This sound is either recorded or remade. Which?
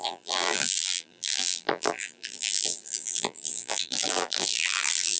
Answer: remade